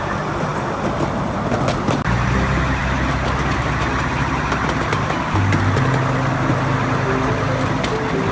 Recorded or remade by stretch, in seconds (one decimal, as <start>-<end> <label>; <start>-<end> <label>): 0.0-8.3 recorded